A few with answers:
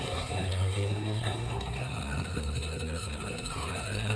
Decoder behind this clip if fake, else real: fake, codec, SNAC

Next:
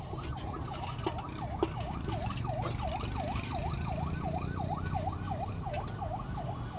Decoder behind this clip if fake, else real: real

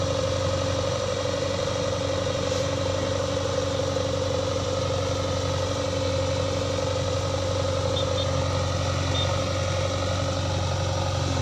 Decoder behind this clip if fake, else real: real